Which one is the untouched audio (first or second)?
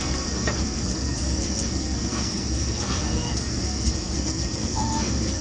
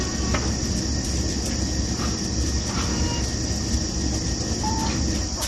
second